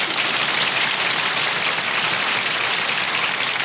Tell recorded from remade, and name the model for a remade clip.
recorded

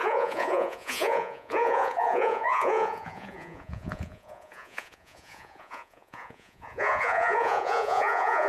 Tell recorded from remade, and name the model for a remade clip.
remade, vocoder, Vocos